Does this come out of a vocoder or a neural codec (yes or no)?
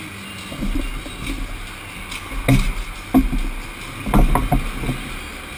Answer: no